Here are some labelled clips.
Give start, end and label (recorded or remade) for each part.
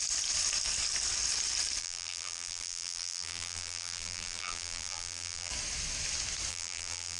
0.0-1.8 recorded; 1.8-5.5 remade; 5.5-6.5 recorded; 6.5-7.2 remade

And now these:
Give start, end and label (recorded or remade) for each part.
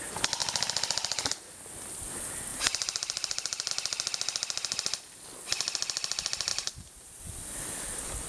0.0-0.4 recorded; 0.4-1.3 remade; 1.3-2.5 recorded; 2.5-3.7 remade; 3.7-6.5 recorded; 6.5-7.2 remade; 7.2-8.3 recorded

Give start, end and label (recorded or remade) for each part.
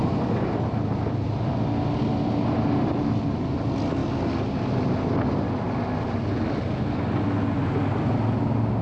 0.0-8.8 recorded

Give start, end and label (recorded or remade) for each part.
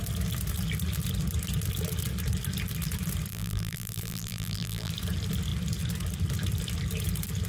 0.0-3.3 recorded; 3.3-4.9 remade; 4.9-7.5 recorded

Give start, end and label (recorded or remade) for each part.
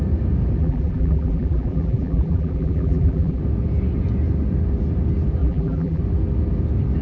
0.0-0.6 recorded; 0.6-3.4 remade; 3.4-5.4 recorded; 5.4-6.0 remade; 6.0-7.0 recorded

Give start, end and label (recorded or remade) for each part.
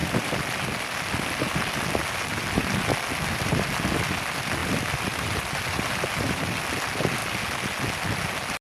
0.0-1.5 remade; 1.5-4.6 recorded; 4.6-6.7 remade; 6.7-8.6 recorded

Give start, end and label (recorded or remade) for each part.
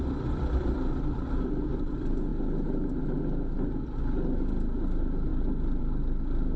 0.0-2.3 remade; 2.3-3.0 recorded; 3.0-5.3 remade; 5.3-5.8 recorded; 5.8-6.6 remade